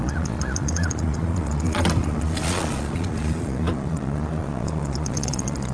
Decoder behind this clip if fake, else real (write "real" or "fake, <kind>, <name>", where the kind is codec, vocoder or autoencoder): fake, vocoder, Vocos